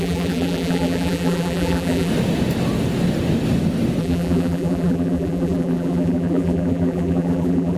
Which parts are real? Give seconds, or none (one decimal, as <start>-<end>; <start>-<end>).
2.1-4.0